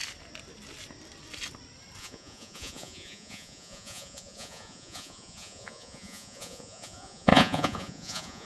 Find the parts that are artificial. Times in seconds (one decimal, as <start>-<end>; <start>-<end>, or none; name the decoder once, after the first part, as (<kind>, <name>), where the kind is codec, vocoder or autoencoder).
2.0-8.5 (vocoder, Vocos)